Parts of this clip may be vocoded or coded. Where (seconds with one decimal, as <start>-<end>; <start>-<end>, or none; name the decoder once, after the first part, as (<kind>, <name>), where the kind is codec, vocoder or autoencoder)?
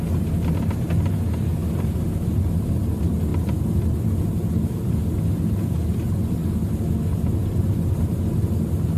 3.3-4.5 (vocoder, BigVGAN v2)